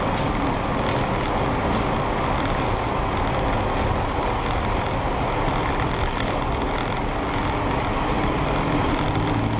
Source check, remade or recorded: recorded